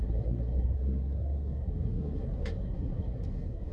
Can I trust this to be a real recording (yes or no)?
no